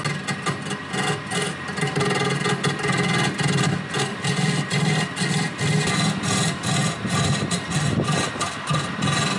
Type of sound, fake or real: real